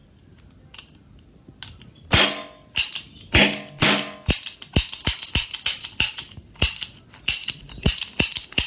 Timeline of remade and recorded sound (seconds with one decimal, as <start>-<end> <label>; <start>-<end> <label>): 0.0-8.7 recorded